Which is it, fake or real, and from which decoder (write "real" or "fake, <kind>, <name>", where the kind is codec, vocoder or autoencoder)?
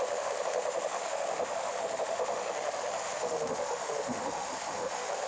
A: fake, autoencoder, DAC-VAE